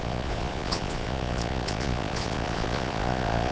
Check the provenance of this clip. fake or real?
fake